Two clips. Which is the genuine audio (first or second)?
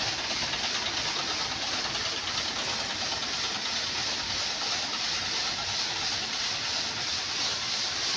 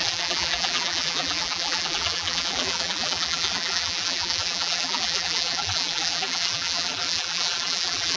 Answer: first